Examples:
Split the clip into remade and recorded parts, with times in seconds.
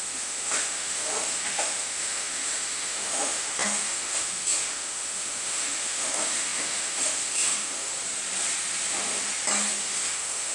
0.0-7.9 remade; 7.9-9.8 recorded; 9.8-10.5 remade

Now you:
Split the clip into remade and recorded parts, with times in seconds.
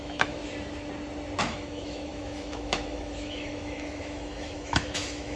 0.0-0.4 remade; 0.4-1.4 recorded; 1.4-5.4 remade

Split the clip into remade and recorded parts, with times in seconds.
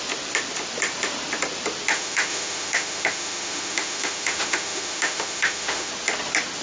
0.0-1.9 recorded; 1.9-5.9 remade; 5.9-6.6 recorded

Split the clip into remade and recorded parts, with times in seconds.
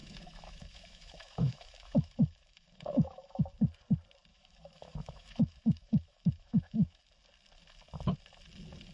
0.0-3.4 remade; 3.4-4.3 recorded; 4.3-7.0 remade; 7.0-8.9 recorded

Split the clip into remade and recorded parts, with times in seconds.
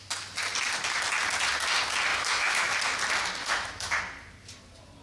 0.0-2.1 recorded; 2.1-2.7 remade; 2.7-3.4 recorded; 3.4-4.0 remade; 4.0-5.0 recorded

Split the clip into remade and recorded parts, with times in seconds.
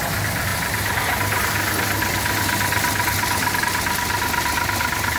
0.0-5.2 recorded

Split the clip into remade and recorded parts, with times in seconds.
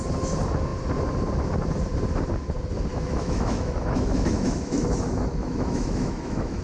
0.0-2.9 recorded; 2.9-6.6 remade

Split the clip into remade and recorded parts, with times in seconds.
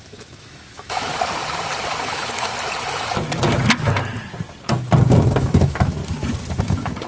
0.0-1.1 remade; 1.1-1.9 recorded; 1.9-2.5 remade; 2.5-5.4 recorded; 5.4-6.0 remade; 6.0-6.6 recorded; 6.6-7.1 remade